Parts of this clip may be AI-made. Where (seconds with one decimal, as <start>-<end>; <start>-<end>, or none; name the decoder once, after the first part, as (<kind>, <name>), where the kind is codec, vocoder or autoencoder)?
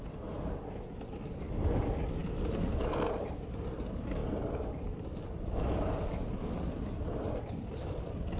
none